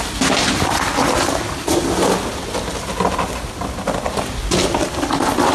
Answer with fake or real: real